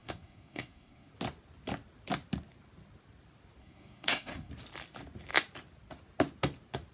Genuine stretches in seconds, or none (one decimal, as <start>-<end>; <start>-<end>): 1.1-3.6; 4.5-6.9